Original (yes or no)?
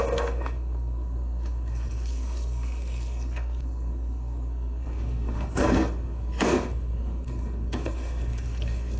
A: no